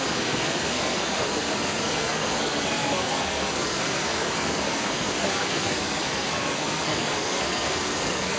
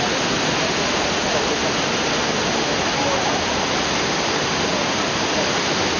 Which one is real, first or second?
second